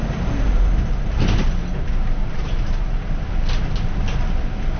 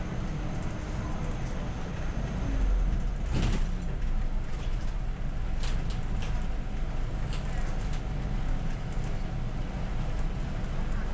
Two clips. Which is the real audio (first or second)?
second